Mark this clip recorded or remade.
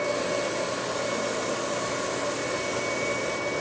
recorded